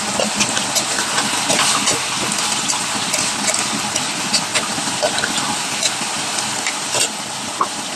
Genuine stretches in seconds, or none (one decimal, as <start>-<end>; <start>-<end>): 0.0-8.0